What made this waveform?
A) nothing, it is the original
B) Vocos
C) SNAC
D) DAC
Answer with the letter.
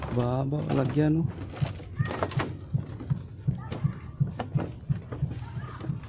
A